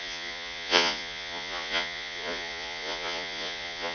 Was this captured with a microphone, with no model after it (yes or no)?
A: no